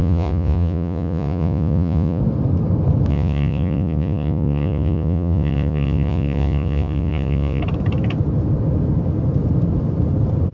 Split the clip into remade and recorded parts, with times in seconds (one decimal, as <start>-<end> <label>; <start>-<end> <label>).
0.0-2.2 remade; 2.2-3.1 recorded; 3.1-7.6 remade; 7.6-10.5 recorded